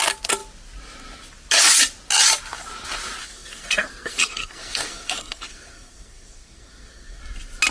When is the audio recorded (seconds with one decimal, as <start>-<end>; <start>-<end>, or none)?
0.0-3.2; 7.2-7.7